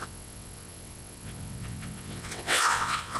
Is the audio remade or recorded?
remade